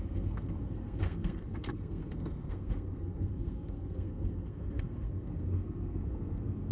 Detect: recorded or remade remade